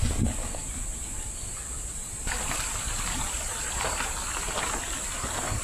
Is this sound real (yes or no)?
yes